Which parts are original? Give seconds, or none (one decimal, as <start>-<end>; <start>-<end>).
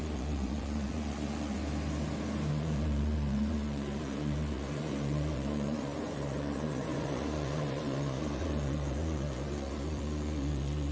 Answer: 1.6-2.5